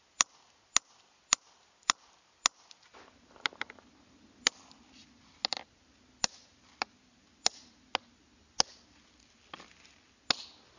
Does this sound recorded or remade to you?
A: recorded